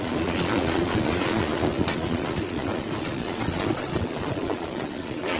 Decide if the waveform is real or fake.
fake